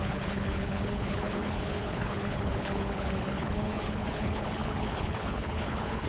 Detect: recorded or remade remade